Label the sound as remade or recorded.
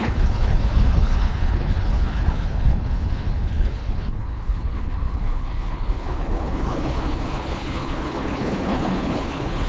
remade